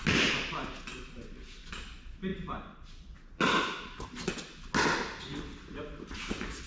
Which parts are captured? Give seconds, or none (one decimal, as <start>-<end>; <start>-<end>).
0.0-6.7